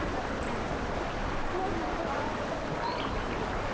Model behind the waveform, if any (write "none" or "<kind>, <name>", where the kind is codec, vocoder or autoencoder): none